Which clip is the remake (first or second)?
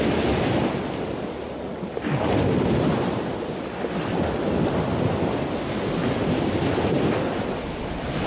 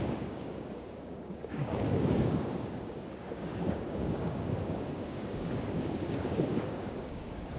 second